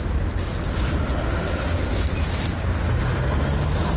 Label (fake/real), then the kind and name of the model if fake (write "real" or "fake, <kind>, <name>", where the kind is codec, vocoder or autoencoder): real